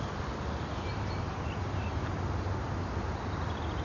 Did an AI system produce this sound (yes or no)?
no